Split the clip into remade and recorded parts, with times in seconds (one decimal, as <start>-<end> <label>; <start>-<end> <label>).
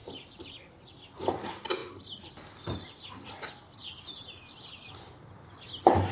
0.0-1.8 recorded; 1.8-2.4 remade; 2.4-6.1 recorded